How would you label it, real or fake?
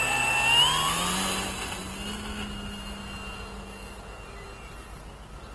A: real